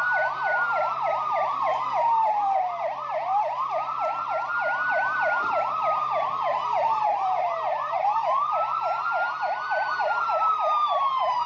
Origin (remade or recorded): remade